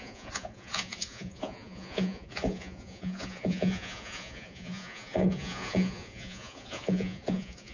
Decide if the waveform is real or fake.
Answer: fake